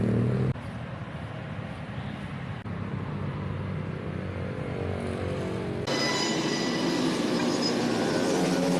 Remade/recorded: recorded